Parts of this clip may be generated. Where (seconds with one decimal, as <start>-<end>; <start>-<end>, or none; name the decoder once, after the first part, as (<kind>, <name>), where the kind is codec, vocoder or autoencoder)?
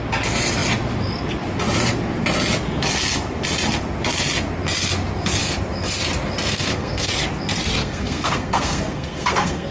6.5-7.1 (codec, SNAC); 7.8-9.7